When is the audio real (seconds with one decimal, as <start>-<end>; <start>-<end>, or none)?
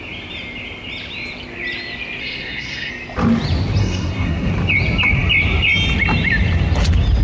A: 0.0-2.2; 2.9-3.8; 4.5-7.2